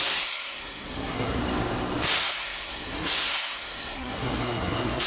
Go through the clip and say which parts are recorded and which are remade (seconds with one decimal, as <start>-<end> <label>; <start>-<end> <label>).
0.0-1.4 remade; 1.4-2.2 recorded; 2.2-5.1 remade